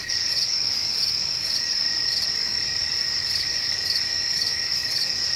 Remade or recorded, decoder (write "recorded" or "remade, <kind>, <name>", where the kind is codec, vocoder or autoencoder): remade, codec, DAC